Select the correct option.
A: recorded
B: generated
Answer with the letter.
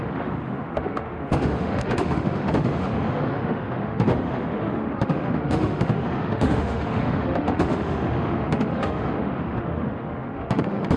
B